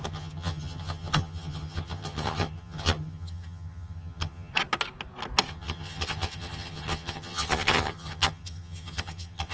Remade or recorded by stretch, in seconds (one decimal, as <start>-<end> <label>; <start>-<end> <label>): 0.0-4.5 remade; 4.5-5.5 recorded; 5.5-9.5 remade